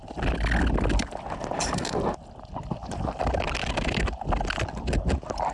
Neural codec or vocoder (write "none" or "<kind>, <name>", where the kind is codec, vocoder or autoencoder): none